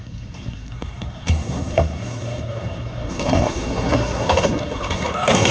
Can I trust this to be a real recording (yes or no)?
no